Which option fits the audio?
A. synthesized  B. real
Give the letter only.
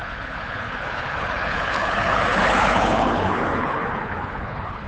A